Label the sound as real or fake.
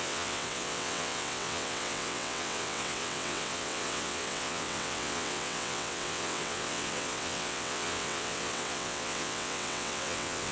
fake